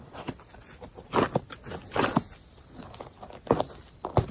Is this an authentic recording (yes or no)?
yes